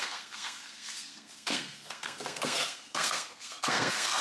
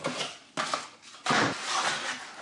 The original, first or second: second